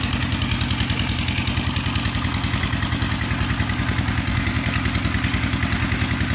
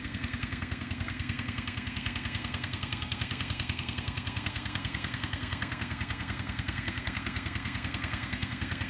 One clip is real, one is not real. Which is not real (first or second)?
second